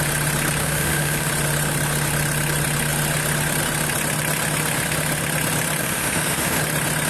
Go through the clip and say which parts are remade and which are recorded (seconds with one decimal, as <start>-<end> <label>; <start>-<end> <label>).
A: 0.0-0.6 recorded; 0.6-1.3 remade; 1.3-5.8 recorded; 5.8-6.6 remade; 6.6-7.1 recorded

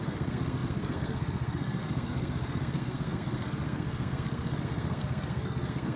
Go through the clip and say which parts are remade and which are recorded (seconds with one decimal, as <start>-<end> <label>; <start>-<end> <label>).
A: 0.0-6.0 remade

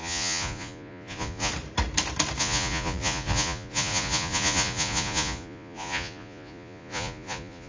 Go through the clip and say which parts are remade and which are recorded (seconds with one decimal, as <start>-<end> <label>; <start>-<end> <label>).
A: 0.0-1.5 remade; 1.5-2.4 recorded; 2.4-7.7 remade

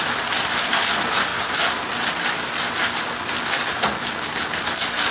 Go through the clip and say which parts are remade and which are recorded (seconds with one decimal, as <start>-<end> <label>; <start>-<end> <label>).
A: 0.0-5.1 recorded

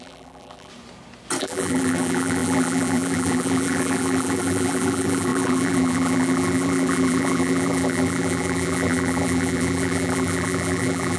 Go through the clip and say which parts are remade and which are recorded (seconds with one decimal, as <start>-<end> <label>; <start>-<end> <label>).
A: 0.0-0.7 remade; 0.7-1.4 recorded; 1.4-11.2 remade

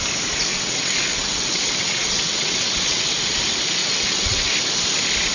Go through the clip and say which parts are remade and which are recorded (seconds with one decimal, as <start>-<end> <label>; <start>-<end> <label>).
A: 0.0-0.5 recorded; 0.5-3.4 remade; 3.4-3.8 recorded; 3.8-4.5 remade; 4.5-5.3 recorded

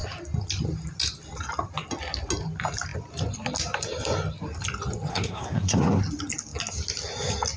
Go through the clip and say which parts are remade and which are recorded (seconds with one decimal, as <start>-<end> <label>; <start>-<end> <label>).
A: 0.0-5.1 recorded; 5.1-6.0 remade; 6.0-7.6 recorded